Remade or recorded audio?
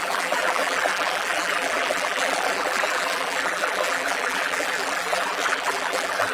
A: remade